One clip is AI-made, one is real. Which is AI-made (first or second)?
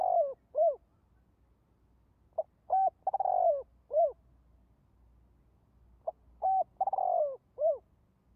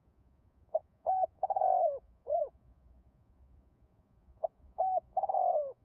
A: second